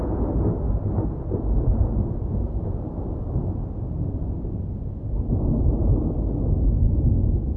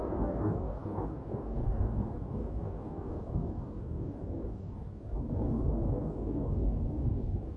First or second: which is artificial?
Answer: second